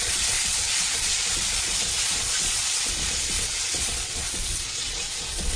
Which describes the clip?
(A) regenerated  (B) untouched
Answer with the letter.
A